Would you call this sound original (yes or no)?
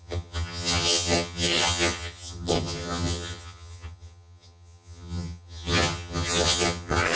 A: no